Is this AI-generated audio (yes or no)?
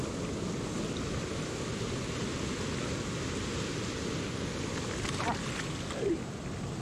no